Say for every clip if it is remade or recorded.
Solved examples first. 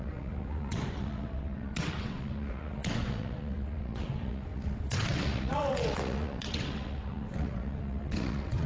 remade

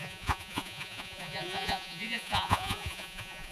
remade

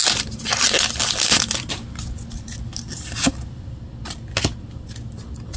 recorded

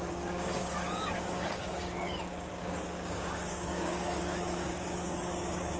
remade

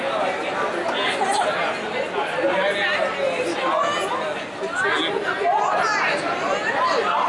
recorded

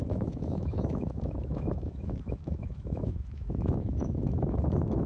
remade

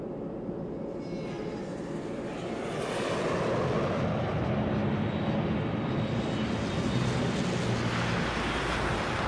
recorded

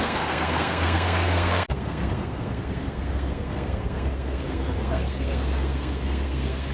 remade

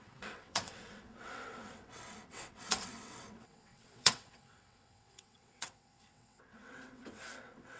remade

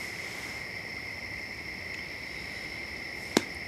remade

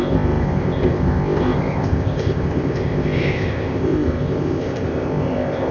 remade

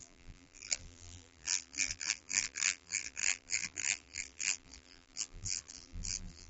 remade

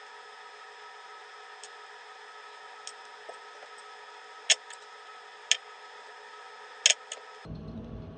recorded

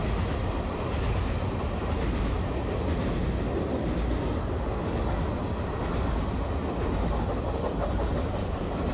recorded